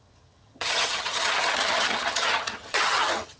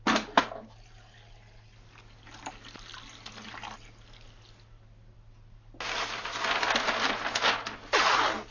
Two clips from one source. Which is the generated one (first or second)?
first